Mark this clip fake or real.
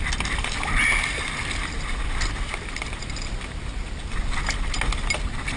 real